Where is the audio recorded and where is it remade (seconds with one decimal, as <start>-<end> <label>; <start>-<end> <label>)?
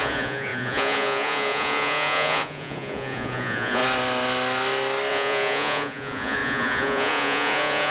0.0-3.8 remade; 3.8-5.1 recorded; 5.1-7.9 remade